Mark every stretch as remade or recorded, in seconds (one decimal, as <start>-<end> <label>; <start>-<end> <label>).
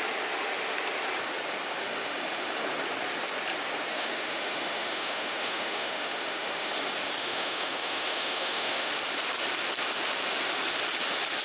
0.0-1.8 recorded; 1.8-2.6 remade; 2.6-3.9 recorded; 3.9-6.7 remade; 6.7-7.2 recorded; 7.2-8.9 remade; 8.9-11.4 recorded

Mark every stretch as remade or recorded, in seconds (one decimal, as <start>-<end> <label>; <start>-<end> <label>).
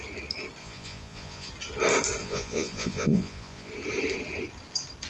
0.0-0.6 recorded; 0.6-1.5 remade; 1.5-2.2 recorded; 2.2-3.7 remade; 3.7-5.1 recorded